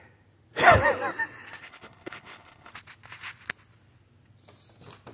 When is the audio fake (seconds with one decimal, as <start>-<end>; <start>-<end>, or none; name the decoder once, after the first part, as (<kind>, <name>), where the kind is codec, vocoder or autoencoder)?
1.6-2.7 (codec, HILCodec)